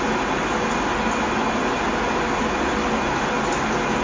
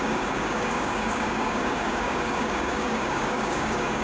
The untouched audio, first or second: first